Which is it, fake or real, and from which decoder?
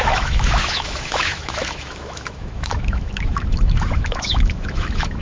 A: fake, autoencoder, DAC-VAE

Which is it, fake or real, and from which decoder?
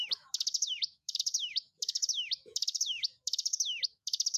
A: fake, autoencoder, DAC-VAE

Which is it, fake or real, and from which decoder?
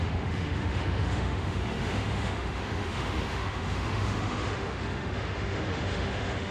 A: fake, autoencoder, DAC-VAE